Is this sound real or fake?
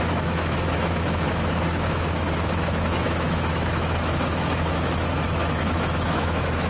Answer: fake